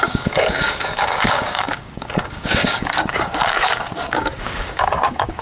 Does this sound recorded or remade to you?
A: remade